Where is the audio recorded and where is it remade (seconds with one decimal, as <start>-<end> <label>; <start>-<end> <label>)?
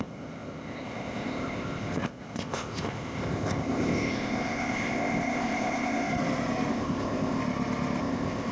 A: 0.0-6.1 remade; 6.1-6.7 recorded; 6.7-7.4 remade; 7.4-8.0 recorded; 8.0-8.5 remade